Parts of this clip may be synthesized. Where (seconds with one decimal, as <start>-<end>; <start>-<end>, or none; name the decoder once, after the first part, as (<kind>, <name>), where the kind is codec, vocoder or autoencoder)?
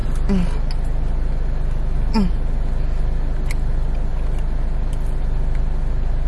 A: none